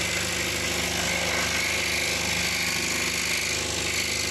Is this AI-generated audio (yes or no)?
no